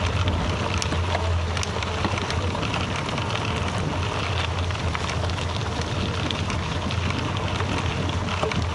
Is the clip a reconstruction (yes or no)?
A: no